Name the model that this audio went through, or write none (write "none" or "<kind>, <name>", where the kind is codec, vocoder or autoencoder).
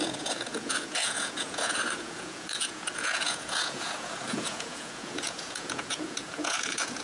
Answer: vocoder, Vocos